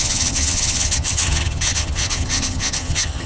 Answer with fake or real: fake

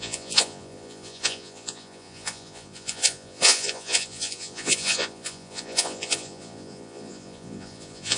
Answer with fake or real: fake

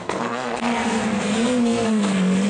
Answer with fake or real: fake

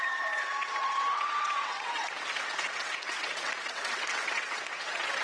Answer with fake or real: fake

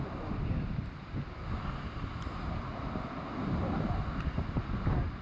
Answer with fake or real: real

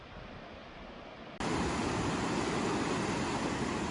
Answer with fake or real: real